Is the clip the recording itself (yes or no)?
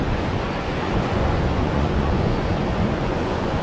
no